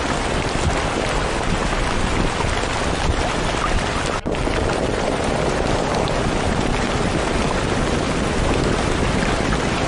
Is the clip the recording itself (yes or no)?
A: yes